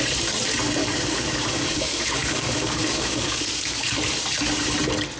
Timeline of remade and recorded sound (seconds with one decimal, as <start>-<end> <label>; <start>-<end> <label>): 0.0-0.8 recorded; 0.8-3.9 remade; 3.9-5.2 recorded